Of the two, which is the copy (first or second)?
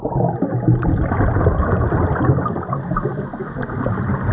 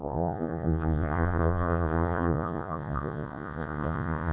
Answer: second